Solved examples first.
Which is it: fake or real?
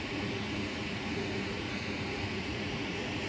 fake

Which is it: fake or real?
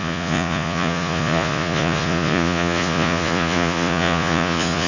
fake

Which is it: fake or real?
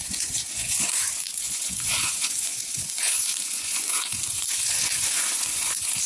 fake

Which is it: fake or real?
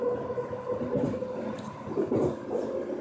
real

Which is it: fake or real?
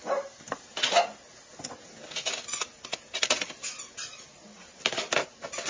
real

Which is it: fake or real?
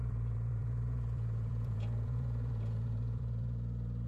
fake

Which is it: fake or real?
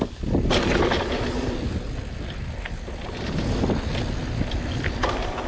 real